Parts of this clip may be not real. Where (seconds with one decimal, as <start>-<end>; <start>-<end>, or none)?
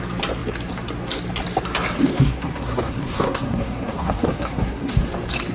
2.1-4.9